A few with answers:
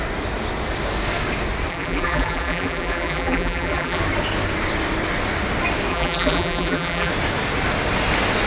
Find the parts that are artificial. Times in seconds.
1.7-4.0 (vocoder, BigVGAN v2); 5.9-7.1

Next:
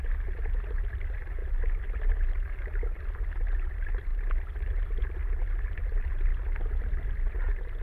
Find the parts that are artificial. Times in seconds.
none